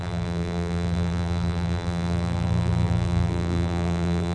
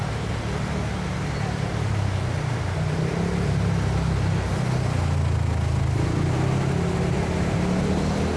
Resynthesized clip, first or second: first